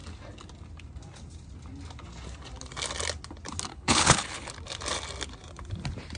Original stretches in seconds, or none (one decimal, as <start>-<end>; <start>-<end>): 0.0-3.7; 4.5-6.2